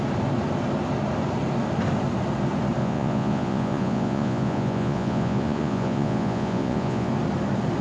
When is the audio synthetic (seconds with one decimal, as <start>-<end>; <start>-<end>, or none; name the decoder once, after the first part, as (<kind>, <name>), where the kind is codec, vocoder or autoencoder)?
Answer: 2.8-7.1 (vocoder, Vocos)